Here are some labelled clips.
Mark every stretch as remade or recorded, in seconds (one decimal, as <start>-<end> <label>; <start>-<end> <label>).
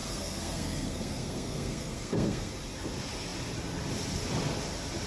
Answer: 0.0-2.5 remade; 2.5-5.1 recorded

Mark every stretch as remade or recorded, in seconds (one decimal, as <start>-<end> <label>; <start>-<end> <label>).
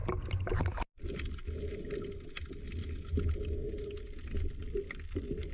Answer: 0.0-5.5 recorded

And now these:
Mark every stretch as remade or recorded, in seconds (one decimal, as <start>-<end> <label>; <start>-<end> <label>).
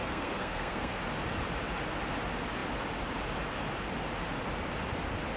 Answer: 0.0-1.0 remade; 1.0-5.4 recorded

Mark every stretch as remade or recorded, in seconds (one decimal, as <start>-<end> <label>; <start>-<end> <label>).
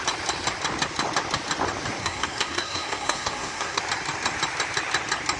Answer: 0.0-2.0 recorded; 2.0-3.8 remade; 3.8-5.4 recorded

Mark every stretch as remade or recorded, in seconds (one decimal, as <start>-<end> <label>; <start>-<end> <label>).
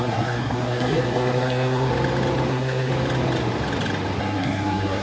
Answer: 0.0-1.9 remade; 1.9-2.5 recorded; 2.5-2.9 remade; 2.9-4.2 recorded; 4.2-5.0 remade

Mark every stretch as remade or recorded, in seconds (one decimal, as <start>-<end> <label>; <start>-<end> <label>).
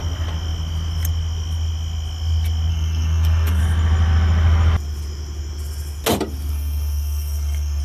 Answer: 0.0-2.7 recorded; 2.7-3.6 remade; 3.6-6.5 recorded; 6.5-7.8 remade